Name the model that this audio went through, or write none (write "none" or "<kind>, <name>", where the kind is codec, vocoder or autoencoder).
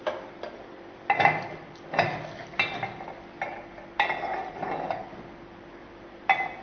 none